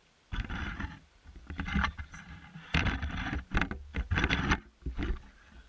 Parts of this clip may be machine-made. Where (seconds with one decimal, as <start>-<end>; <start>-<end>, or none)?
0.0-3.4